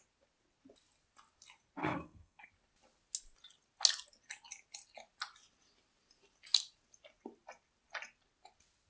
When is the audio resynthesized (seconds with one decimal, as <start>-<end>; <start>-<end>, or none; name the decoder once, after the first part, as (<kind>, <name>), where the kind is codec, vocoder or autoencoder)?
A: 1.8-2.5 (codec, SNAC)